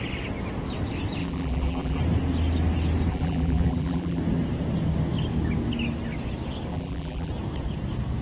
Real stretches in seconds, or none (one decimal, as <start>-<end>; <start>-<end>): 0.0-1.2; 2.0-3.1; 4.2-6.7; 7.3-8.2